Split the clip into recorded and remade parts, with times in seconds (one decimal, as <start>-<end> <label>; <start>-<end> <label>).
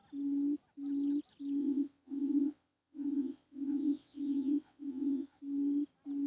0.0-1.6 recorded; 1.6-5.4 remade; 5.4-6.3 recorded